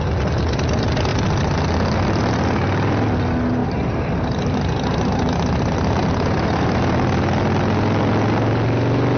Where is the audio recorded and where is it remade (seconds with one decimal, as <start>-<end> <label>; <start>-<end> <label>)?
0.0-3.6 recorded; 3.6-6.8 remade; 6.8-9.2 recorded